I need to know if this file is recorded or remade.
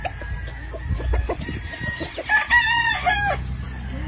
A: recorded